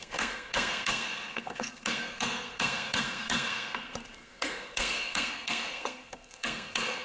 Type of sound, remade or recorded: remade